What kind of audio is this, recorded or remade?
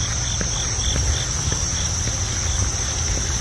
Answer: recorded